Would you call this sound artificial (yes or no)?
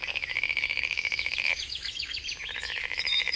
yes